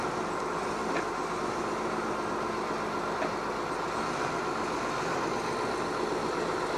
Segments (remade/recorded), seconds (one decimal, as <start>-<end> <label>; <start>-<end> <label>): 0.0-6.8 recorded